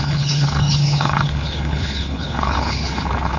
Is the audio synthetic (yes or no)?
yes